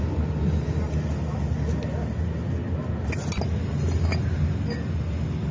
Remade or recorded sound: recorded